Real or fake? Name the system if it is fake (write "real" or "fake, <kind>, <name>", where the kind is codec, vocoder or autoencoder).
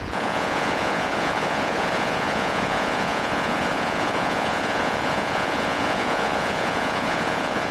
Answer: fake, vocoder, Vocos